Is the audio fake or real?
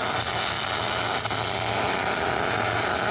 real